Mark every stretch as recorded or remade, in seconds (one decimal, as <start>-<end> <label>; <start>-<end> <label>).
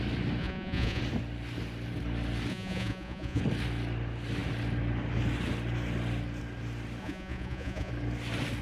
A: 0.0-0.4 recorded; 0.4-1.0 remade; 1.0-2.5 recorded; 2.5-3.4 remade; 3.4-7.0 recorded; 7.0-7.9 remade; 7.9-8.6 recorded